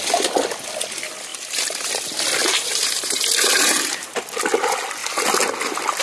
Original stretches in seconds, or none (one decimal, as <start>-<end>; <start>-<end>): 0.0-1.3; 1.9-2.4; 4.2-6.0